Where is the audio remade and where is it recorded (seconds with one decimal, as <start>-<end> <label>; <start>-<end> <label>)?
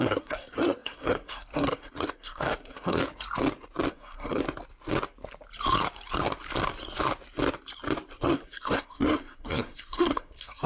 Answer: 0.0-3.0 remade; 3.0-3.9 recorded; 3.9-4.4 remade; 4.4-8.2 recorded; 8.2-10.7 remade